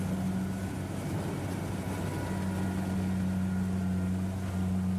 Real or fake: real